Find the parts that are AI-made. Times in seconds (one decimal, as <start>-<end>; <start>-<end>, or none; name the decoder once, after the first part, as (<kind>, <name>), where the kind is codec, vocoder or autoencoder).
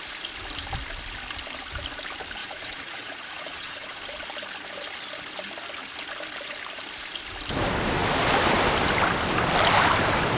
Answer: 2.4-4.0 (vocoder, Vocos)